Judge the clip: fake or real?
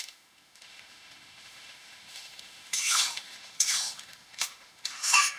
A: fake